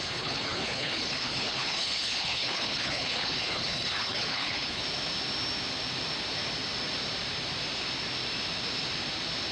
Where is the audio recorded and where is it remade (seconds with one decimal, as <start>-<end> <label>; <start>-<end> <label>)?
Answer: 0.0-4.8 remade; 4.8-9.5 recorded

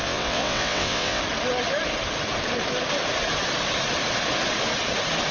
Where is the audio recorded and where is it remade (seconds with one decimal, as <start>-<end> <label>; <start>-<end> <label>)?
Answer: 0.0-1.2 remade; 1.2-5.3 recorded

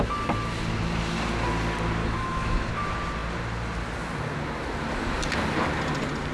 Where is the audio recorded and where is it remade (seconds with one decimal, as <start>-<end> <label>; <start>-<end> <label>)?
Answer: 0.0-2.0 recorded; 2.0-2.7 remade; 2.7-6.3 recorded

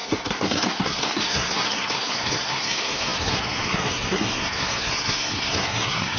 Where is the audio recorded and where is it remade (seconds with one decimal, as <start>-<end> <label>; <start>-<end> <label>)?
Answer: 0.0-6.2 remade

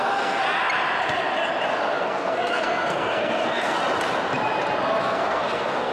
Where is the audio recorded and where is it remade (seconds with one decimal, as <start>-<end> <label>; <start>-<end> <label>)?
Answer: 0.0-0.4 remade; 0.4-2.0 recorded; 2.0-3.8 remade; 3.8-5.0 recorded; 5.0-5.9 remade